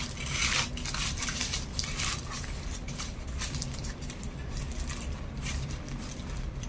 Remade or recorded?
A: remade